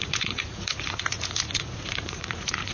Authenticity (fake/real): fake